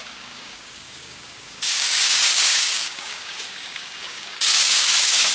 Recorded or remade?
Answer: remade